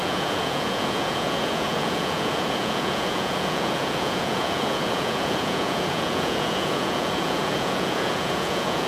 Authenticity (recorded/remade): remade